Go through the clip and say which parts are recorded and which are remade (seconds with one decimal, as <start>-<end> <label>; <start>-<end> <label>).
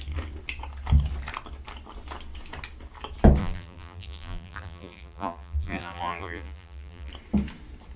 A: 0.0-3.4 recorded; 3.4-7.1 remade; 7.1-8.0 recorded